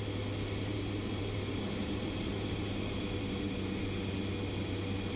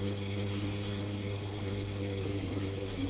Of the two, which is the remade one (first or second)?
second